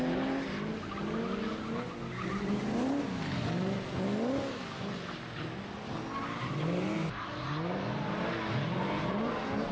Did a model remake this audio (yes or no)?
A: no